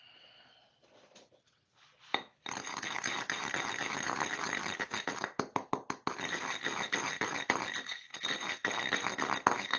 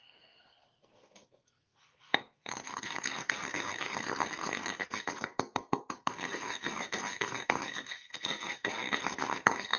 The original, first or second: first